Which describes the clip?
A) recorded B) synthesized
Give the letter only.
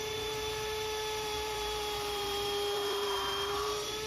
B